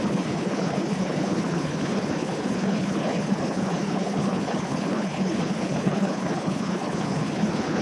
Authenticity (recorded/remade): remade